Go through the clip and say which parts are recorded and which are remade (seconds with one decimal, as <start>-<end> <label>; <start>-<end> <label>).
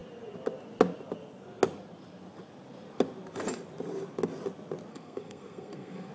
0.0-4.9 recorded; 4.9-6.1 remade